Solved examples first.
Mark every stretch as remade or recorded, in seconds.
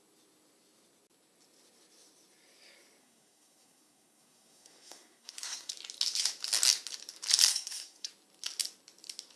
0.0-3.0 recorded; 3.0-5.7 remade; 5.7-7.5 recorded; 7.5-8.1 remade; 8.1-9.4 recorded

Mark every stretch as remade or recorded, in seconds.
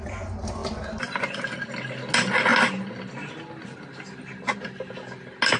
0.0-5.6 recorded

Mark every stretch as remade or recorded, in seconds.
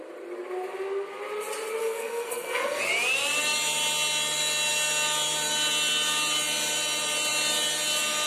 0.0-1.8 recorded; 1.8-2.8 remade; 2.8-8.3 recorded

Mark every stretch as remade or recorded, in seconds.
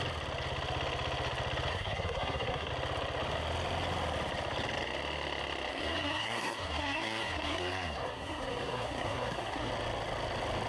0.0-1.7 recorded; 1.7-2.7 remade; 2.7-5.7 recorded; 5.7-9.7 remade; 9.7-10.7 recorded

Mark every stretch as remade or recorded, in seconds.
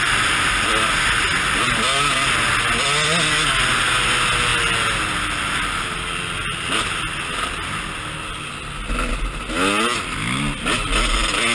0.0-11.5 recorded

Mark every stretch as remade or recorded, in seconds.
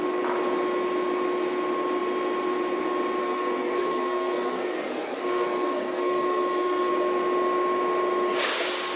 0.0-3.2 recorded; 3.2-6.9 remade; 6.9-9.0 recorded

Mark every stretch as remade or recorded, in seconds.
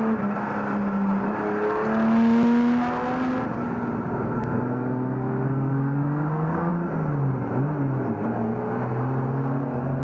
0.0-4.2 recorded; 4.2-6.7 remade; 6.7-10.0 recorded